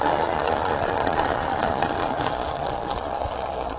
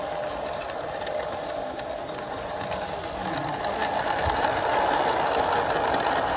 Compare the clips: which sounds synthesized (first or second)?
first